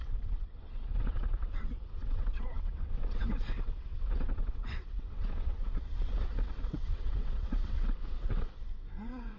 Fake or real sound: fake